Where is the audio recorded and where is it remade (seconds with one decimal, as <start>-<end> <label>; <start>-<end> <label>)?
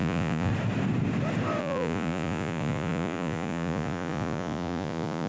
0.0-0.5 remade; 0.5-1.6 recorded; 1.6-5.3 remade